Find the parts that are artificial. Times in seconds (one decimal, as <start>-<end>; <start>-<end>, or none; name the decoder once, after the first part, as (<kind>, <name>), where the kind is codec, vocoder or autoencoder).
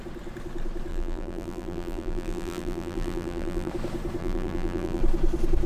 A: 0.9-3.7 (vocoder, BigVGAN v2); 4.2-5.0